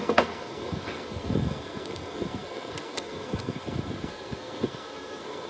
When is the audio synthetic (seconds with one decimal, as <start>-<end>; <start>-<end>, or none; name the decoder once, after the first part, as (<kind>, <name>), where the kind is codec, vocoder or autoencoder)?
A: 0.0-5.5 (codec, SNAC)